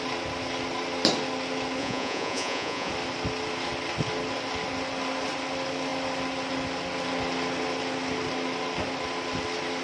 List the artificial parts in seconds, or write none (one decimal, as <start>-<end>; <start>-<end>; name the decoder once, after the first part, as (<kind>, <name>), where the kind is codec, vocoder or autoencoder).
1.8-2.9 (vocoder, Vocos)